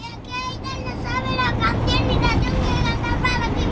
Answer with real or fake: real